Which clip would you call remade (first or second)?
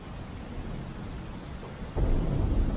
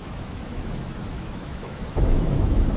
second